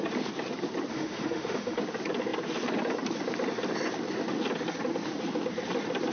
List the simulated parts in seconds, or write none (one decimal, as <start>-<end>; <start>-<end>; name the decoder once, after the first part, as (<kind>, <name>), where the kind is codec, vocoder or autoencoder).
0.9-1.8 (autoencoder, DAC-VAE)